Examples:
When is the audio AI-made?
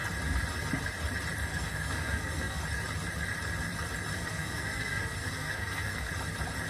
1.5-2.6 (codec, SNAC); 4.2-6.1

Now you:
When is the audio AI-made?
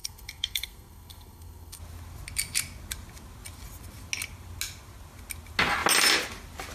0.0-1.8 (codec, SNAC)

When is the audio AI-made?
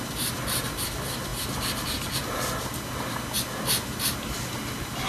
none